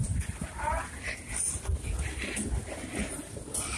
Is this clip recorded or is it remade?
remade